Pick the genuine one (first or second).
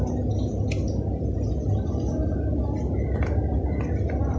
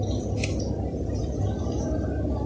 first